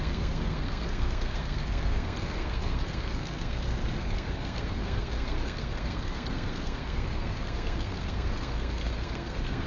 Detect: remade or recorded remade